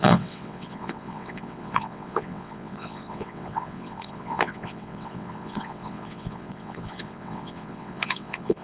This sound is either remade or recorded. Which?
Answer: remade